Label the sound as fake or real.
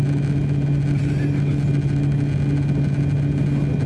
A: real